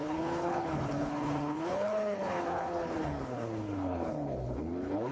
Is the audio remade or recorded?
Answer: remade